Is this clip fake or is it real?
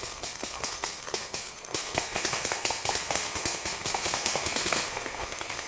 fake